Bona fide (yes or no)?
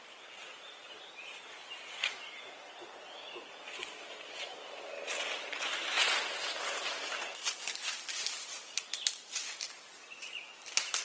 yes